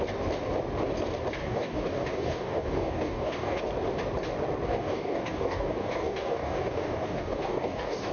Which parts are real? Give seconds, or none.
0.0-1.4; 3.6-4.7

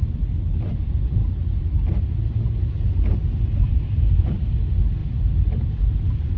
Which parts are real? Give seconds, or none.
0.0-6.4

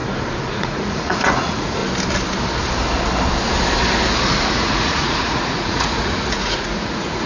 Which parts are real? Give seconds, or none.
0.0-0.5; 1.8-4.5

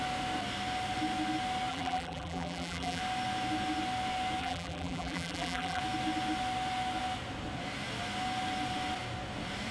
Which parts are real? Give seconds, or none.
0.0-1.7; 3.0-4.4; 5.8-9.7

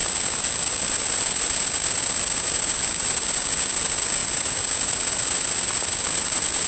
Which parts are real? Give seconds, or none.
0.0-6.7

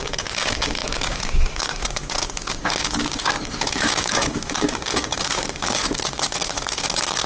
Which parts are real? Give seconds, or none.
none